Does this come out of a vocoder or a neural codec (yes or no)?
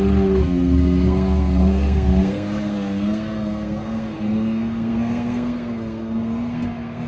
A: yes